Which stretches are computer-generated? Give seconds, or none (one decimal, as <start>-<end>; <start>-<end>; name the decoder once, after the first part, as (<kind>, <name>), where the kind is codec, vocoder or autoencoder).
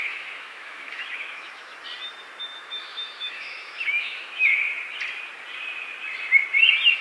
0.0-1.7 (autoencoder, DAC-VAE); 2.4-4.5